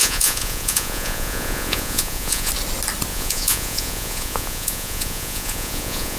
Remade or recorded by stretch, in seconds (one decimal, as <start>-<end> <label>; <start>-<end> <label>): 0.0-2.5 remade; 2.5-3.1 recorded; 3.1-6.2 remade